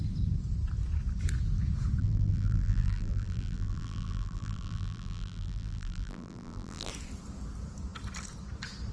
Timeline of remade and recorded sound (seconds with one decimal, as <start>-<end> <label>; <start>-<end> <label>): 0.0-2.0 recorded; 2.0-6.9 remade; 6.9-8.9 recorded